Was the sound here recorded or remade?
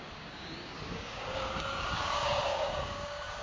remade